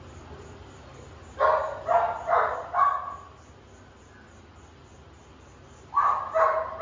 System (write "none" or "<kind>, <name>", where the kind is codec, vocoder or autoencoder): none